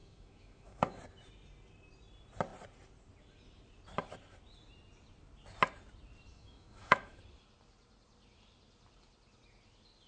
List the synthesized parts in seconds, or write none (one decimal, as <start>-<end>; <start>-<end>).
0.0-1.0; 6.3-7.2